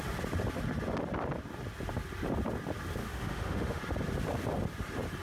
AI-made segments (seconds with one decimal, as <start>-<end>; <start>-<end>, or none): 3.0-3.8

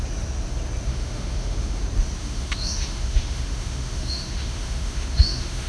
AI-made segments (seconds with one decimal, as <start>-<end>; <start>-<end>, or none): 0.9-1.8; 2.2-5.7

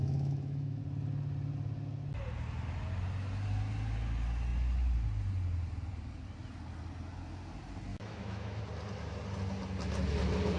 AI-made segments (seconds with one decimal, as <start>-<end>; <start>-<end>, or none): 0.0-0.8; 7.9-8.6

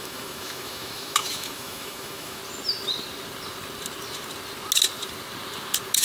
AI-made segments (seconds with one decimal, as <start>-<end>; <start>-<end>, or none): 0.0-2.4

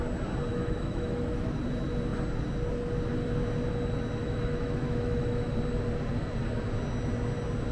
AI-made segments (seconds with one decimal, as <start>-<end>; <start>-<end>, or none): 0.5-1.6; 4.2-5.5